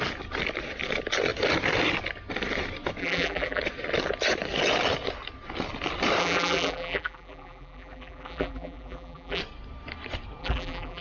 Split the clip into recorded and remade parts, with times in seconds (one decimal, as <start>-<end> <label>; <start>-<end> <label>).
0.0-3.0 recorded; 3.0-3.6 remade; 3.6-6.2 recorded; 6.2-9.4 remade; 9.4-10.4 recorded; 10.4-11.0 remade